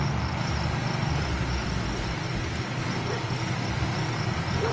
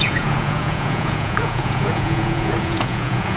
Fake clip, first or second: second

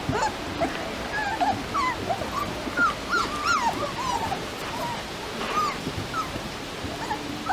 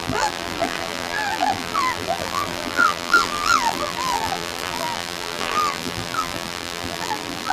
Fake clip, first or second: second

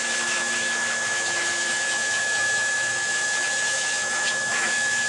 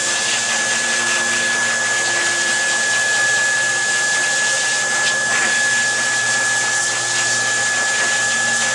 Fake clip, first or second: first